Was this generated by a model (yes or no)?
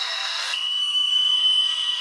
yes